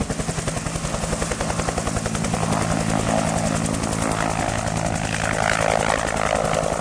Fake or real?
real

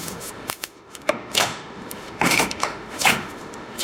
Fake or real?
fake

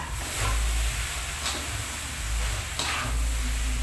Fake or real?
real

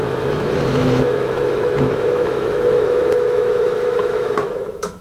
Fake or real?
fake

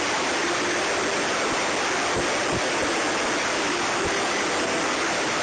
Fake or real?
real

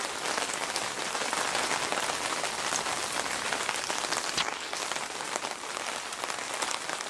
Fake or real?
real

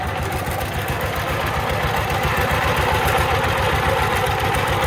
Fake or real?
real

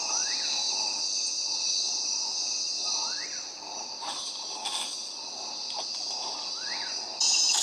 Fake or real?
real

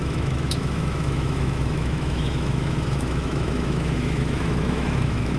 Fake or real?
fake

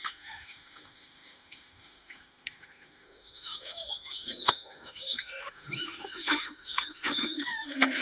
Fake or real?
fake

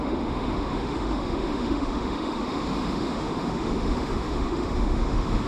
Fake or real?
fake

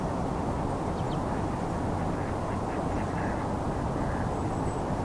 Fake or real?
real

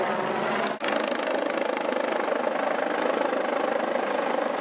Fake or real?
real